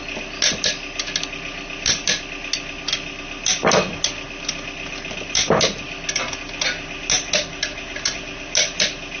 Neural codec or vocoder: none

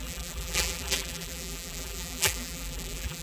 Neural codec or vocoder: vocoder, BigVGAN v2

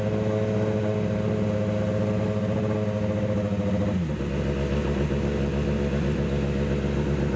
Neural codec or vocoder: none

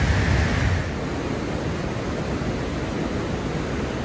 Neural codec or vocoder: none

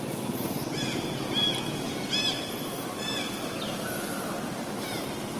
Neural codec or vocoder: none